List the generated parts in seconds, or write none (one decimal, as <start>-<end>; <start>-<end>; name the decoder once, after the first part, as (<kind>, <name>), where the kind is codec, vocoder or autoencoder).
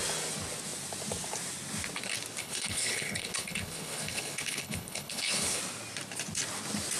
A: 2.4-5.6 (codec, HILCodec)